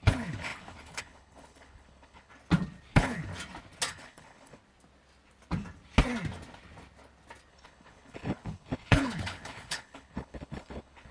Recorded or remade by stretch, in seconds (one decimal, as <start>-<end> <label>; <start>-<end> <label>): 0.0-2.3 remade; 2.3-2.9 recorded; 2.9-3.3 remade; 3.3-3.9 recorded; 3.9-4.6 remade; 4.6-7.5 recorded; 7.5-11.1 remade